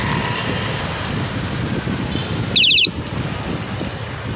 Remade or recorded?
recorded